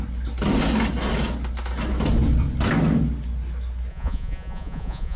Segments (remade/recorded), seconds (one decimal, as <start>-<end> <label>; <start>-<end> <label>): 0.0-3.9 recorded; 3.9-5.2 remade